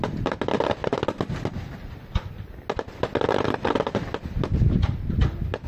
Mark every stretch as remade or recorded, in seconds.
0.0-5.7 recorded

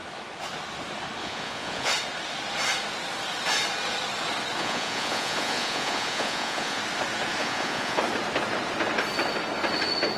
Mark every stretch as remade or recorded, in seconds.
0.0-1.2 recorded; 1.2-1.9 remade; 1.9-4.6 recorded; 4.6-6.8 remade; 6.8-7.4 recorded; 7.4-8.0 remade; 8.0-10.2 recorded

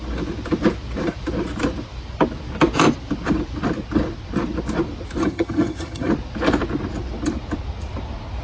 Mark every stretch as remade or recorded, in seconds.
0.0-5.2 recorded; 5.2-6.1 remade; 6.1-8.4 recorded